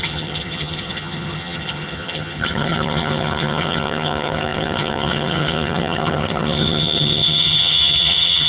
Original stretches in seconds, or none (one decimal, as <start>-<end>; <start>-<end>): none